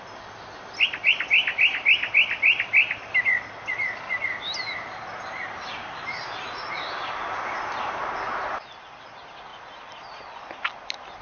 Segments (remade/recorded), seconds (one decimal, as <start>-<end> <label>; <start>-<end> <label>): 0.0-11.2 recorded